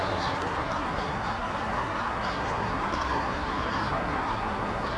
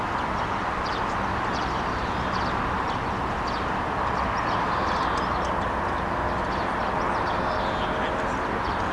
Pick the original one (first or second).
second